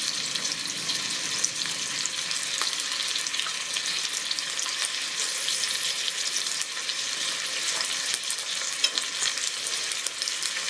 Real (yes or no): yes